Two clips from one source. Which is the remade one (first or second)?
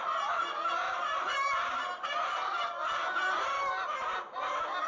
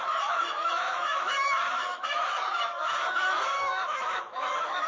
second